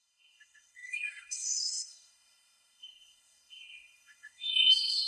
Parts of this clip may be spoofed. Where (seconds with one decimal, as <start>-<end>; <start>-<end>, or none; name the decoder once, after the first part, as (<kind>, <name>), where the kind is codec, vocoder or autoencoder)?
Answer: 0.0-5.1 (codec, SNAC)